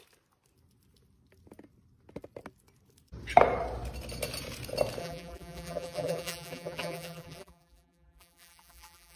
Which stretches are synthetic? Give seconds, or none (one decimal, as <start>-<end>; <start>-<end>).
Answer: 5.0-9.2